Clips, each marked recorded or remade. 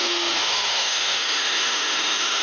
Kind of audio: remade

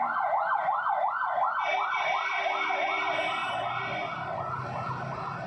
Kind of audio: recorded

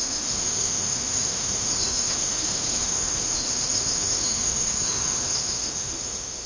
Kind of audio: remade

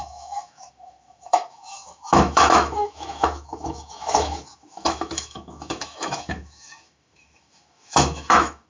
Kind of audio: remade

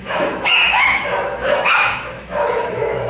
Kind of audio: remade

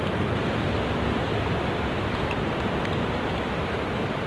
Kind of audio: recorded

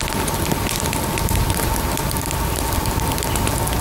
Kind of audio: recorded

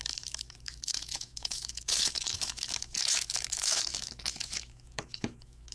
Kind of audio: remade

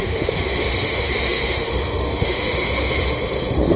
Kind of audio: remade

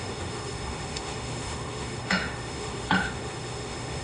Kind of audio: remade